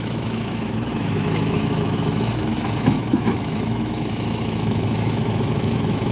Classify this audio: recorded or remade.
remade